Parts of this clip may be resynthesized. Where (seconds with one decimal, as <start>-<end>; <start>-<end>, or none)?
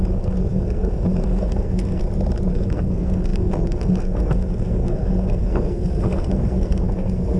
0.0-2.0; 2.5-7.4